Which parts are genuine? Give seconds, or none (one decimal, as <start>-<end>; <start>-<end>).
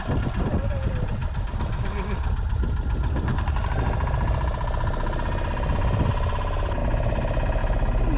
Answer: 0.0-8.2